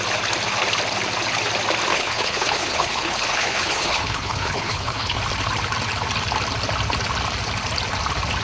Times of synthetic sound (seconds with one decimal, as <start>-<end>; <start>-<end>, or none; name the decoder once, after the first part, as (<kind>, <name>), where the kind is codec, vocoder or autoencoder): 1.9-5.2 (codec, HILCodec)